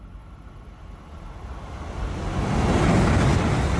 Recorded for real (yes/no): yes